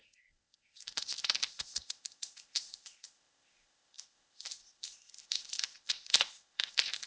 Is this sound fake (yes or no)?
yes